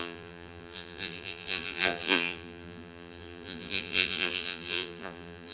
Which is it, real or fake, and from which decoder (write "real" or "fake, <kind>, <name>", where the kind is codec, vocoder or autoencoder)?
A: fake, vocoder, BigVGAN v2